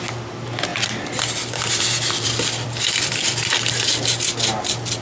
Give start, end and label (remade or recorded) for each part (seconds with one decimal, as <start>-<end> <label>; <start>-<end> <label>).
0.0-0.7 recorded; 0.7-3.7 remade; 3.7-5.0 recorded